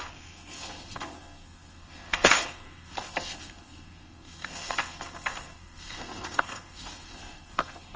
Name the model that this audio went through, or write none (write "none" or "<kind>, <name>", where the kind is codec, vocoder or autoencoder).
codec, SNAC